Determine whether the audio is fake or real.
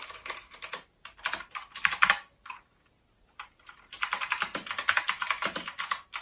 real